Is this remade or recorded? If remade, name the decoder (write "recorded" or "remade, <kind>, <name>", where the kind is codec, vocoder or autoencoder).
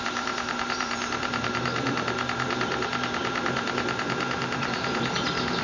remade, vocoder, BigVGAN v2